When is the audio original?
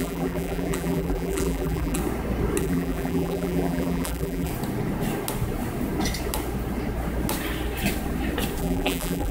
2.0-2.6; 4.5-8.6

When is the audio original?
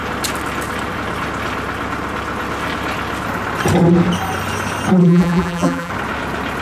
0.0-5.0; 5.9-6.6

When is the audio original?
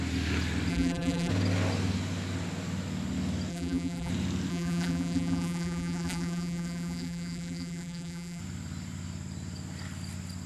0.0-0.7; 1.3-3.5; 4.1-4.5; 8.4-10.5